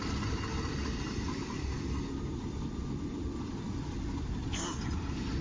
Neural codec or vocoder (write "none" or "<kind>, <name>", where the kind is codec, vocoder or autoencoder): none